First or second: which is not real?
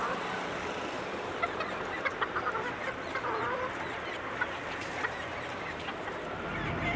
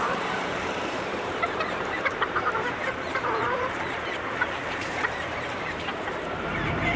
second